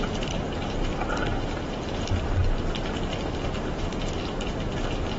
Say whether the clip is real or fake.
real